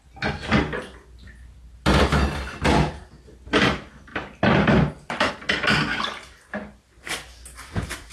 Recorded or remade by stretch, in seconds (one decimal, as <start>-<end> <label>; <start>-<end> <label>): 0.0-4.1 recorded; 4.1-5.3 remade; 5.3-8.1 recorded